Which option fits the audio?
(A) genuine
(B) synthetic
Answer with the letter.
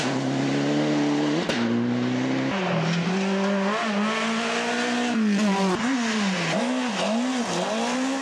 A